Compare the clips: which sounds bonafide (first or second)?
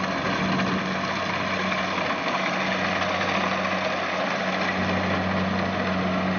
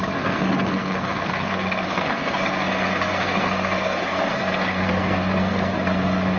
first